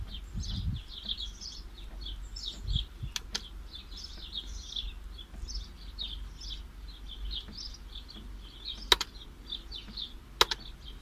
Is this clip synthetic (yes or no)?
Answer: no